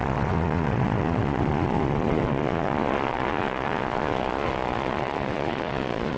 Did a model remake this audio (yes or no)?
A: yes